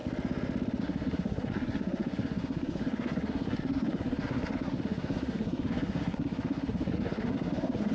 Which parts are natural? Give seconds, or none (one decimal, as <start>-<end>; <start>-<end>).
0.0-0.8